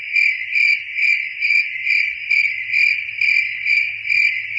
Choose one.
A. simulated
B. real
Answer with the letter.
B